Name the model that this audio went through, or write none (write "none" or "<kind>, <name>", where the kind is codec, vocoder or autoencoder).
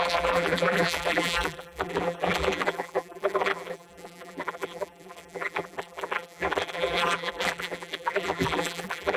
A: vocoder, BigVGAN v2